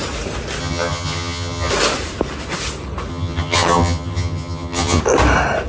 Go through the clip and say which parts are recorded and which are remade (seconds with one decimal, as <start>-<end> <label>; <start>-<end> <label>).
0.0-0.6 recorded; 0.6-1.7 remade; 1.7-3.1 recorded; 3.1-5.0 remade; 5.0-5.7 recorded